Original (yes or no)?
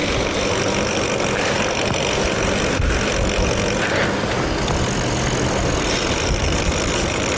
yes